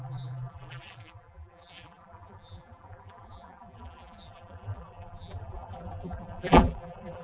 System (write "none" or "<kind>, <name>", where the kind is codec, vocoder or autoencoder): vocoder, BigVGAN v2